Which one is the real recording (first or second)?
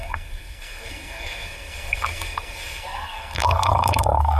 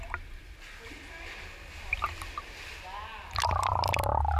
second